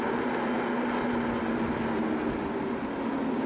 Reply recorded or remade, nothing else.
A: recorded